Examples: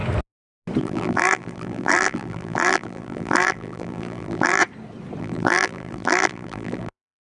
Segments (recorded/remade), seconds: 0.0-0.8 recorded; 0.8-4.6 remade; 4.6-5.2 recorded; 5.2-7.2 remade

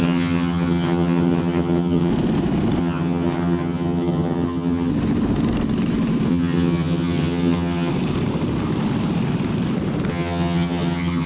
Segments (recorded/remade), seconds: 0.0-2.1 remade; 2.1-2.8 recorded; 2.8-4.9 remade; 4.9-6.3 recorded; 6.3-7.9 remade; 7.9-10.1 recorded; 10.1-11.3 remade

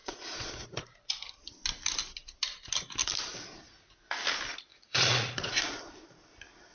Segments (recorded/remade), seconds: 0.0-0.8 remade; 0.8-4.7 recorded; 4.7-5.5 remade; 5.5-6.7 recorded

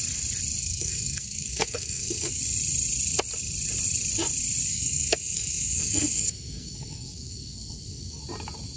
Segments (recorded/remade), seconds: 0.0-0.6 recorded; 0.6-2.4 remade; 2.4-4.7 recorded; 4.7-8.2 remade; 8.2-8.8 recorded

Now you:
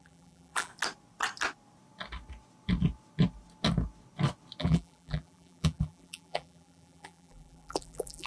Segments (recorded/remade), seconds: 0.0-0.7 remade; 0.7-4.6 recorded; 4.6-8.3 remade